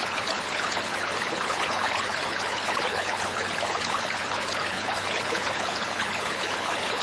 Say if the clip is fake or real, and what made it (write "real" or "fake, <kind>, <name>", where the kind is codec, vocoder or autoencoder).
fake, codec, HILCodec